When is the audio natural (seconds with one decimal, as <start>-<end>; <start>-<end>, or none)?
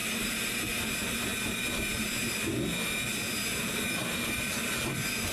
0.0-5.3